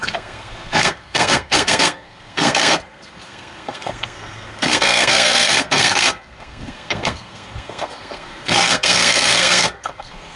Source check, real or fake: fake